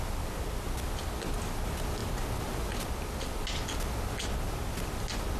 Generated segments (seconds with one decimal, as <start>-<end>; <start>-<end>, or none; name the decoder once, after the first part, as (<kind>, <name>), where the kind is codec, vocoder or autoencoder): none